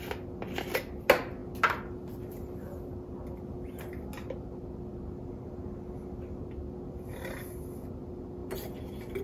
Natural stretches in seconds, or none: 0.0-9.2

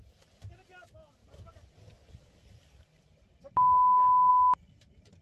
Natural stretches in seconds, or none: 0.0-5.2

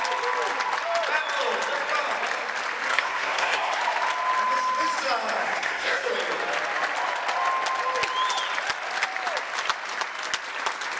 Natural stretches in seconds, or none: 0.0-2.9; 3.8-5.4; 6.1-11.0